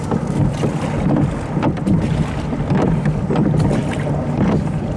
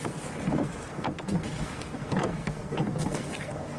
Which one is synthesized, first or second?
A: second